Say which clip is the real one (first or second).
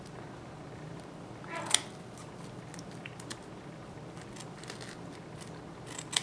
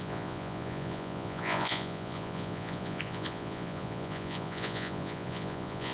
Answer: first